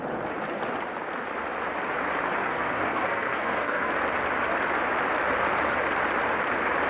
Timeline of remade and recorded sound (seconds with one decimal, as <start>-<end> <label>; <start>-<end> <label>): 0.0-2.4 recorded; 2.4-3.9 remade; 3.9-6.9 recorded